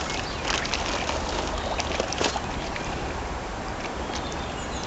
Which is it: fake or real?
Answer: real